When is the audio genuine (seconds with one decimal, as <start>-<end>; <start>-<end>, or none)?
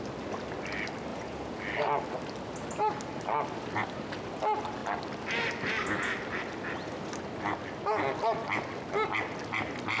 0.0-1.1; 1.6-10.0